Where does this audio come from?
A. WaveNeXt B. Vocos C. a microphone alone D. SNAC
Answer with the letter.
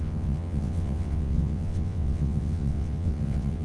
A